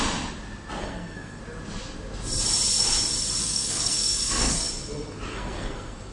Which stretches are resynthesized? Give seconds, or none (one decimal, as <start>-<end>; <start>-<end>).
0.8-1.4; 3.4-4.7; 5.3-6.1